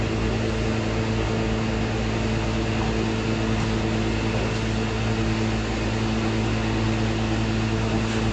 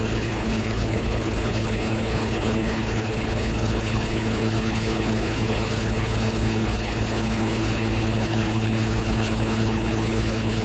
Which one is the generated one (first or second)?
second